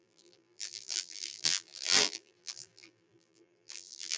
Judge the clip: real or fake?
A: fake